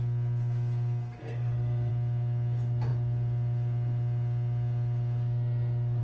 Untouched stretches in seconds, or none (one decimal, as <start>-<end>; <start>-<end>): 0.0-1.2; 1.9-6.0